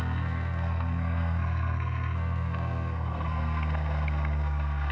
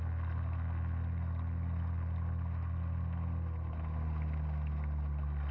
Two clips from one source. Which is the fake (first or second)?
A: first